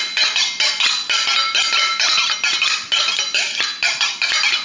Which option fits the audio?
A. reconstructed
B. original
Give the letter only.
B